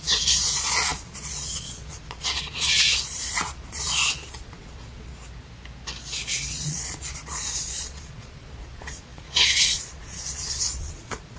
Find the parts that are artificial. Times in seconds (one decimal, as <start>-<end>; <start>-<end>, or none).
0.0-5.1; 6.5-11.4